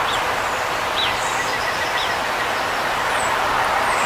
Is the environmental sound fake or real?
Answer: real